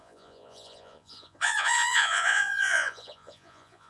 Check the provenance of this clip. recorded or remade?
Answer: remade